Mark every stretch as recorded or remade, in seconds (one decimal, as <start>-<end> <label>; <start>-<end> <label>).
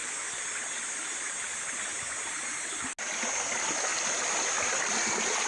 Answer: 0.0-5.5 recorded